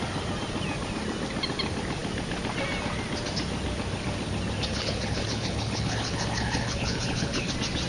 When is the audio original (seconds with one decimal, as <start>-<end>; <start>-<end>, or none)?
0.0-4.7; 7.5-7.9